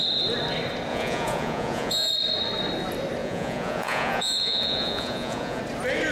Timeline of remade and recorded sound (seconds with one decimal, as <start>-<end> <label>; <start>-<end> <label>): 0.0-0.9 recorded; 0.9-2.1 remade; 2.1-3.2 recorded; 3.2-5.6 remade; 5.6-6.1 recorded